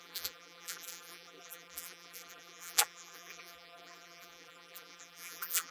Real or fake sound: fake